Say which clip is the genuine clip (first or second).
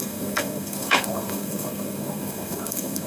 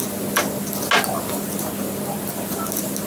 second